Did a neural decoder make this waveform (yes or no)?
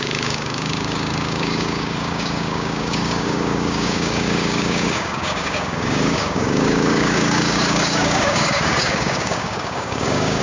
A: yes